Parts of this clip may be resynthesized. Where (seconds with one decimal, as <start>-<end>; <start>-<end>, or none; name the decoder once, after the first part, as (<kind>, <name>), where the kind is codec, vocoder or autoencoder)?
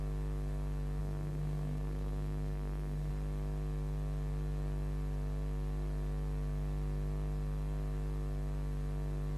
1.0-3.1 (codec, SNAC)